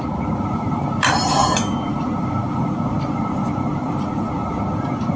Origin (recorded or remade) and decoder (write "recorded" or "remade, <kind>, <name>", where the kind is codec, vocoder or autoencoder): remade, vocoder, BigVGAN v2